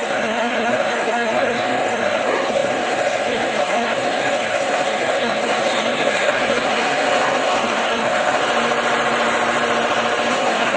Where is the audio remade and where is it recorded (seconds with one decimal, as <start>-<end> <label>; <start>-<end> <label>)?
0.0-8.4 remade; 8.4-10.3 recorded; 10.3-10.8 remade